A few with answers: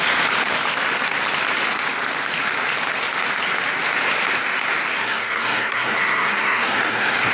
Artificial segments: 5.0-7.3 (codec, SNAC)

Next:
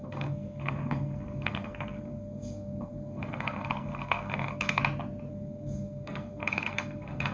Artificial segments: 0.0-4.8 (codec, SNAC); 5.3-7.3

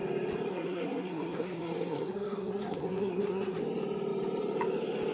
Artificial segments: 0.5-3.6 (codec, SNAC)